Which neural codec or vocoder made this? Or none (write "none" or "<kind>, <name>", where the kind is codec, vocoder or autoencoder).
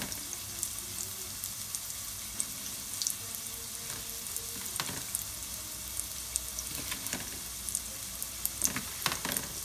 none